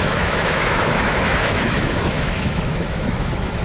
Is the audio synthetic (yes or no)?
yes